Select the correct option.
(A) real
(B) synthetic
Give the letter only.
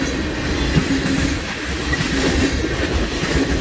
A